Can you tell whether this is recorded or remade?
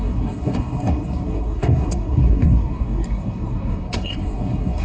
remade